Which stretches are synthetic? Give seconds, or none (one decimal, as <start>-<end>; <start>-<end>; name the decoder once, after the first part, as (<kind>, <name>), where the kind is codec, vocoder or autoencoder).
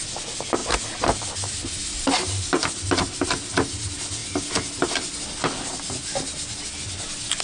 none